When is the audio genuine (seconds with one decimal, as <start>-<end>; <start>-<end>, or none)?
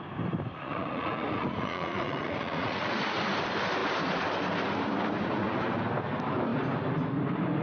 0.0-0.5; 2.9-7.6